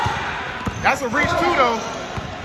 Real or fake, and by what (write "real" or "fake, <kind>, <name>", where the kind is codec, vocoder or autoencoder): real